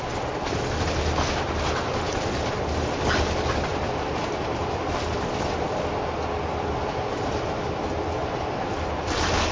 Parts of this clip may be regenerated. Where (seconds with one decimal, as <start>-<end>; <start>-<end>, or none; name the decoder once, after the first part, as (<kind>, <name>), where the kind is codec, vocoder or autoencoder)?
3.7-4.8 (vocoder, BigVGAN v2); 8.2-9.0